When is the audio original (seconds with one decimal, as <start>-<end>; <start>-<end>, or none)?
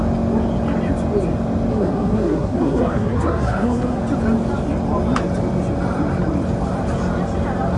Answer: 0.0-1.7; 4.0-7.8